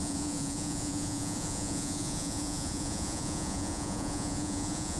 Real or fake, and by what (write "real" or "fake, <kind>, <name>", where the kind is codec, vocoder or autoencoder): fake, vocoder, Vocos